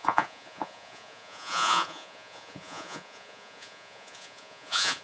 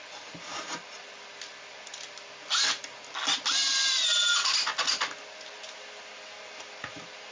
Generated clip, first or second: first